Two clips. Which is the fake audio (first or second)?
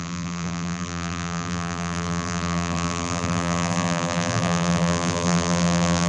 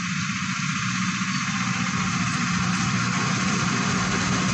first